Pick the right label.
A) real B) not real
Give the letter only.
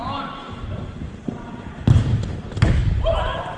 A